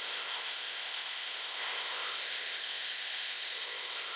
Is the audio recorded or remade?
remade